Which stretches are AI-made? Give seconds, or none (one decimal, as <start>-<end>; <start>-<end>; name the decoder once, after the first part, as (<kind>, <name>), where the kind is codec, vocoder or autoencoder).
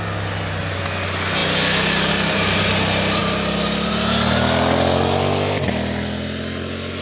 none